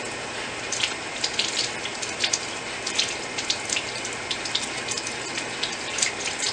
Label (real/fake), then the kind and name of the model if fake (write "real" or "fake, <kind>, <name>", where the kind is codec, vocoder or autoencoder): real